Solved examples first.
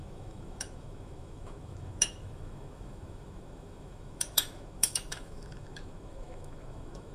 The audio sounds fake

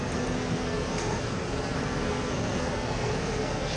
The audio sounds fake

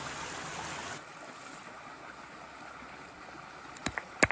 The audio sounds real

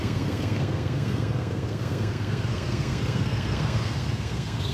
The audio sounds fake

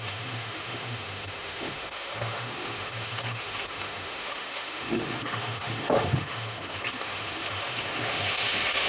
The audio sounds fake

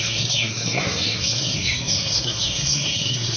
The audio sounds fake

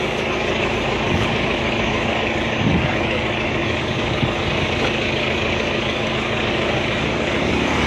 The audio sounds fake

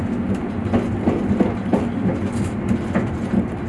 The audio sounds real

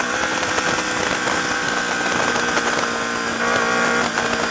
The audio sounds real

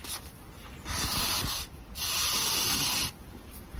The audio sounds real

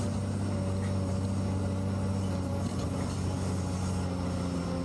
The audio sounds real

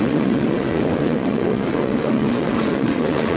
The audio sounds fake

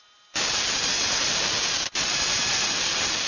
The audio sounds real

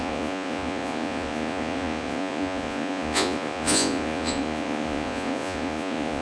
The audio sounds fake